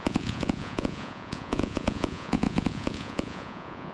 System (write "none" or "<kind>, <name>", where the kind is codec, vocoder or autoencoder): vocoder, Vocos